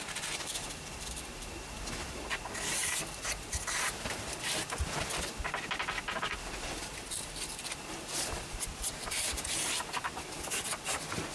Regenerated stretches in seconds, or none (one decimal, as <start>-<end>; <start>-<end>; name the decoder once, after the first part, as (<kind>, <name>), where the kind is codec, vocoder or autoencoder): none